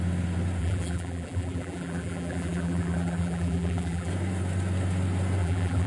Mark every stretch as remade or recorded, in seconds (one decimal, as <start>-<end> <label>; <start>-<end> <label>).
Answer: 0.0-0.6 recorded; 0.6-4.1 remade; 4.1-5.4 recorded; 5.4-5.9 remade